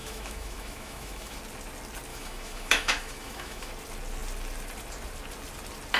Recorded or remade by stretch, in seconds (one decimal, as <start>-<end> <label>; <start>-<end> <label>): 0.0-1.4 remade; 1.4-2.1 recorded; 2.1-3.7 remade; 3.7-6.0 recorded